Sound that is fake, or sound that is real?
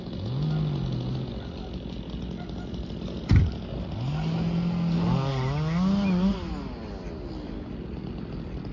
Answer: real